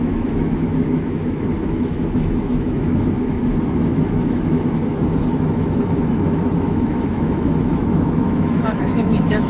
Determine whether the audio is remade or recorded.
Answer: remade